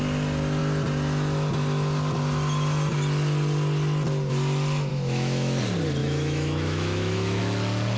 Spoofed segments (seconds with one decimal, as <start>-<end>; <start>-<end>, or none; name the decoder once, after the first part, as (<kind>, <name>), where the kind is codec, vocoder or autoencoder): 4.9-5.6 (autoencoder, DAC-VAE); 6.0-7.4